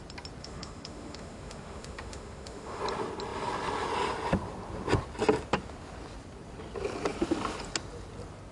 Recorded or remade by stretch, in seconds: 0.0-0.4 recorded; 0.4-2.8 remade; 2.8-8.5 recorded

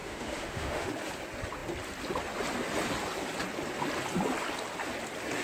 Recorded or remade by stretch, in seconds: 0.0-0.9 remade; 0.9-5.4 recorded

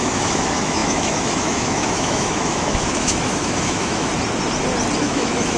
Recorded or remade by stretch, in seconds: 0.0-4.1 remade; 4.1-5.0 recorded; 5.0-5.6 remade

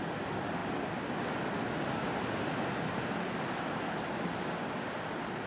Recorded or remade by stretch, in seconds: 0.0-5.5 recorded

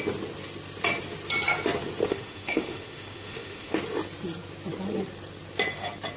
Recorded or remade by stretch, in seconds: 0.0-2.1 recorded; 2.1-3.7 remade; 3.7-6.2 recorded

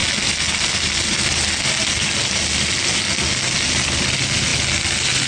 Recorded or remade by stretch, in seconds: 0.0-5.3 recorded